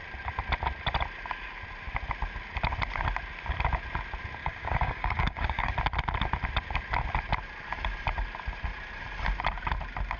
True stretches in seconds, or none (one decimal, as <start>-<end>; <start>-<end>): 0.0-4.4; 5.7-10.2